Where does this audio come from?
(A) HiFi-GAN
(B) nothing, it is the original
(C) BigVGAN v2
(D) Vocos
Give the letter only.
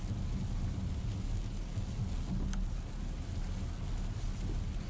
B